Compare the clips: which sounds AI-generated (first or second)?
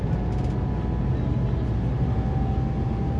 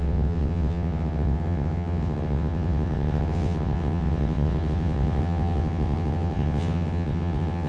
second